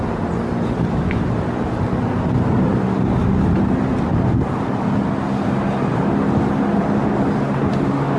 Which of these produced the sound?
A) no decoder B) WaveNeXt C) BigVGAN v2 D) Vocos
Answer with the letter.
A